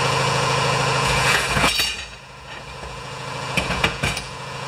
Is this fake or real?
fake